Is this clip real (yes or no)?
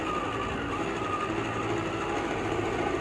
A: no